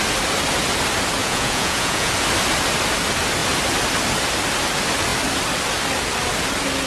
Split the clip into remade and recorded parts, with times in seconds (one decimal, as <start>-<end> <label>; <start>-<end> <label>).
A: 0.0-1.2 recorded; 1.2-2.1 remade; 2.1-6.9 recorded